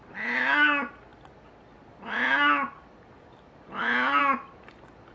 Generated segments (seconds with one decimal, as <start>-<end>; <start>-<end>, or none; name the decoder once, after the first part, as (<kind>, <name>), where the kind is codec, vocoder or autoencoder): none

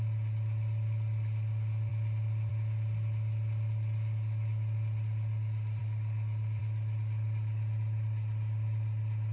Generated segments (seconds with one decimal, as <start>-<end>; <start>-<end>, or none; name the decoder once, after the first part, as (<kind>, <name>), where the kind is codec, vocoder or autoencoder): none

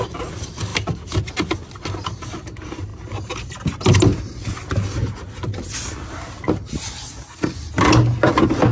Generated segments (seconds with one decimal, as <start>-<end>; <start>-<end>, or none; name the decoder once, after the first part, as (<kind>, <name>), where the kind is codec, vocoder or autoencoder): none